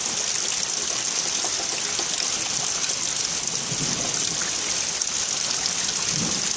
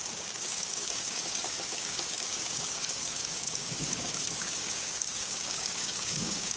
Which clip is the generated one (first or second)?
second